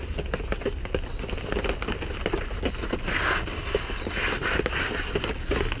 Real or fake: real